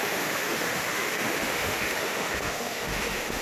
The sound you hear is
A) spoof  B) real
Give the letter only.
A